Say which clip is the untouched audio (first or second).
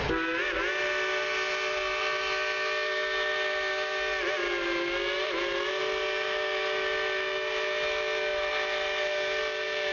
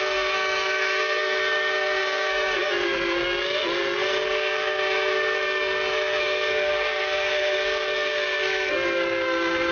first